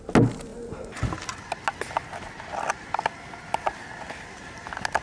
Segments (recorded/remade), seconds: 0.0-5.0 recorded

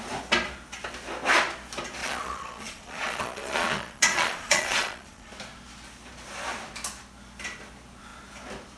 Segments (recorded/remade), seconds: 0.0-2.0 recorded; 2.0-5.3 remade; 5.3-8.8 recorded

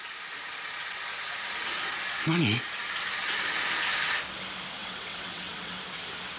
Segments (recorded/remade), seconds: 0.0-4.8 recorded; 4.8-5.8 remade; 5.8-6.4 recorded

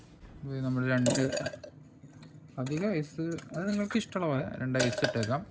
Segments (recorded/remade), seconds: 0.0-1.1 recorded; 1.1-4.4 remade; 4.4-5.5 recorded

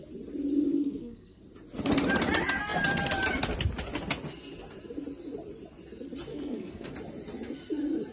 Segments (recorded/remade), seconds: 0.0-0.7 recorded; 0.7-1.4 remade; 1.4-6.3 recorded; 6.3-6.9 remade; 6.9-8.1 recorded

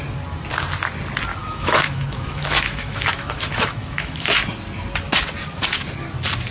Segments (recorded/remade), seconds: 0.0-1.3 recorded; 1.3-4.3 remade; 4.3-6.5 recorded

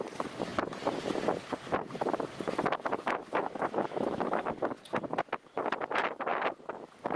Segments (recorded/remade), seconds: 0.0-3.3 recorded; 3.3-4.5 remade; 4.5-7.2 recorded